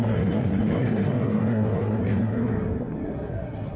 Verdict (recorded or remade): remade